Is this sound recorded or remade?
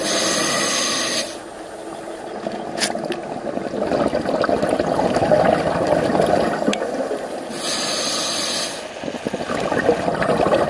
recorded